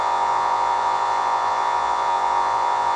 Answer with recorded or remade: remade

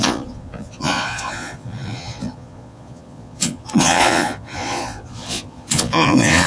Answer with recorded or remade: remade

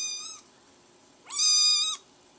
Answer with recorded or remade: recorded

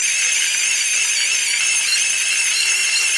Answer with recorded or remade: recorded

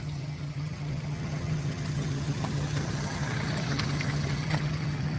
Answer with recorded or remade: remade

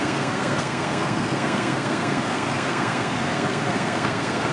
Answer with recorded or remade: remade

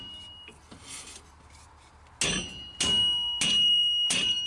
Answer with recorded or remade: recorded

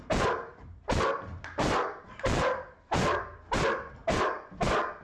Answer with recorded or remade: recorded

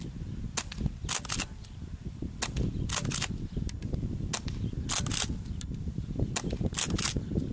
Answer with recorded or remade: recorded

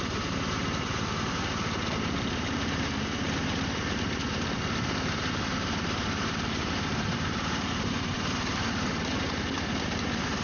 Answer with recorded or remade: remade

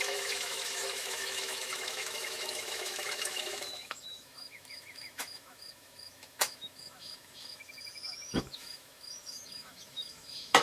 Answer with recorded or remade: remade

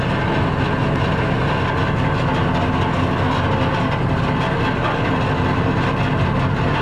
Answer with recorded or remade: recorded